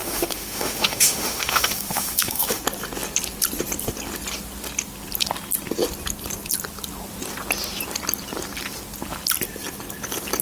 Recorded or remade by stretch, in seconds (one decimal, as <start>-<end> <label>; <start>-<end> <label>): 0.0-2.6 remade; 2.6-10.4 recorded